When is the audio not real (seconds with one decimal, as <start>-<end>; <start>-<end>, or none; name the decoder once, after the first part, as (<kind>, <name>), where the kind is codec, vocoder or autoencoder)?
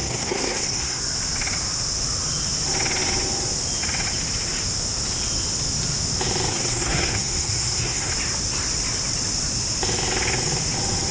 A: 0.0-1.0 (codec, SNAC); 6.5-8.1